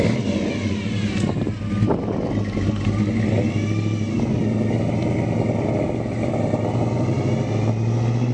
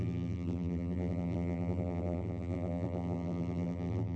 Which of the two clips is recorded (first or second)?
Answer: first